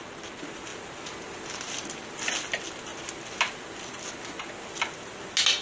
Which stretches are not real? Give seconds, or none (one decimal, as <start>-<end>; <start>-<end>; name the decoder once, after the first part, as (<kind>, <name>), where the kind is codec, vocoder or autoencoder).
none